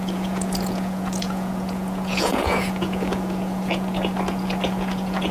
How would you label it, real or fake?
fake